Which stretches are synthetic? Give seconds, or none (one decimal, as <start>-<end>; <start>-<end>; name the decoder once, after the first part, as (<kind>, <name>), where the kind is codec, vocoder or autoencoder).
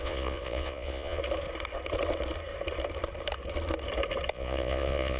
0.0-1.2 (vocoder, Vocos); 4.3-5.2